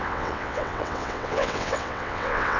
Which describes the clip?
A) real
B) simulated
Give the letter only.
B